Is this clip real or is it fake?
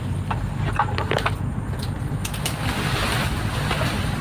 real